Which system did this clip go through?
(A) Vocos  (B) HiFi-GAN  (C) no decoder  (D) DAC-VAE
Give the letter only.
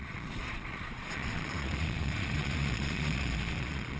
A